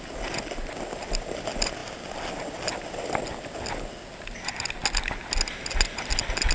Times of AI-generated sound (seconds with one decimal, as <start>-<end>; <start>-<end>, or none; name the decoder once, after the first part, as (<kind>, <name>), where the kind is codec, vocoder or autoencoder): none